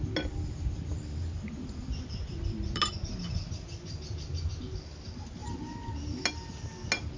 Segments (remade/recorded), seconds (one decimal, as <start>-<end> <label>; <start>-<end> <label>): 0.0-7.2 recorded